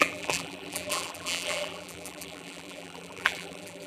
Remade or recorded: remade